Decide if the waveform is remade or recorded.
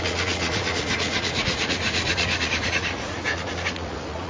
remade